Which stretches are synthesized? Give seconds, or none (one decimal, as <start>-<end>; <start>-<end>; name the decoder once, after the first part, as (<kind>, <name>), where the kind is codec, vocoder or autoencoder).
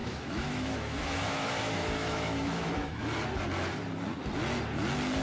0.0-3.1 (autoencoder, DAC-VAE)